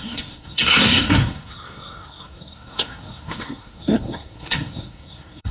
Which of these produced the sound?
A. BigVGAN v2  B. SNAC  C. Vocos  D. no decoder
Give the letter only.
B